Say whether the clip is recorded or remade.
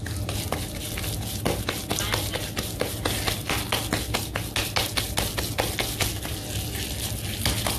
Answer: recorded